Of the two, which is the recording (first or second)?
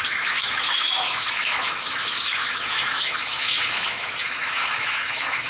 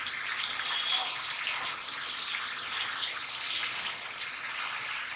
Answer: second